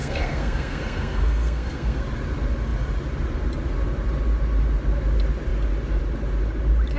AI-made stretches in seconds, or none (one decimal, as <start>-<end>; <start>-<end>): 0.0-2.0